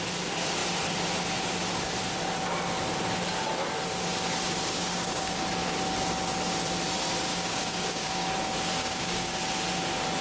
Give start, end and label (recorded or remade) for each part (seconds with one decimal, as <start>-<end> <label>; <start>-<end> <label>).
0.0-4.7 recorded; 4.7-5.4 remade; 5.4-7.3 recorded; 7.3-8.3 remade; 8.3-8.8 recorded; 8.8-9.4 remade; 9.4-10.2 recorded